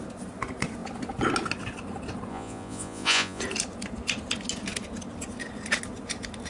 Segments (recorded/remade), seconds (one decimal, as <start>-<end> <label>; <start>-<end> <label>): 0.0-2.3 recorded; 2.3-3.4 remade; 3.4-6.5 recorded